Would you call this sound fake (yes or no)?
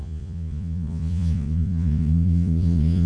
yes